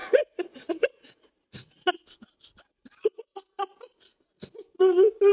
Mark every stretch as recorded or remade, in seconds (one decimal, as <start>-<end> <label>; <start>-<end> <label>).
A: 0.0-1.3 remade; 1.3-5.3 recorded